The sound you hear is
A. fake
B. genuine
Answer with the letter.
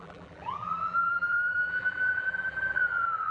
A